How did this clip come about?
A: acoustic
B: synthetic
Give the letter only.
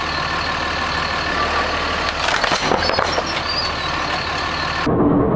A